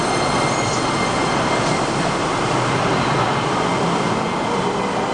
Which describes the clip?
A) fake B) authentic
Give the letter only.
B